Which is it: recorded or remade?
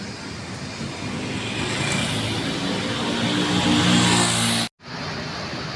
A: recorded